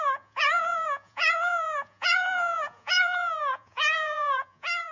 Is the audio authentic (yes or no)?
no